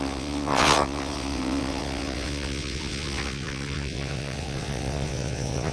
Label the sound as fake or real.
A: fake